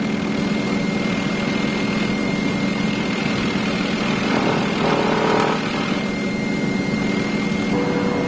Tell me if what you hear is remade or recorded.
recorded